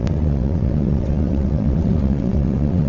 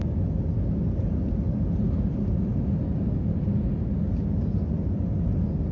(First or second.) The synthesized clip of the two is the first